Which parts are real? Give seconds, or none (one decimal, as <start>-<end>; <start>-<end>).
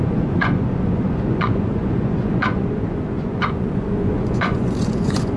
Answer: none